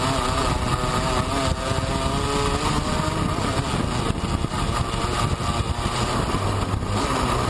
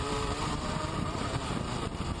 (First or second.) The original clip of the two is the first